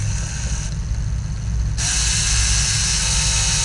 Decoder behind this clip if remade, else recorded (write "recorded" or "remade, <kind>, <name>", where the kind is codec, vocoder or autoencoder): recorded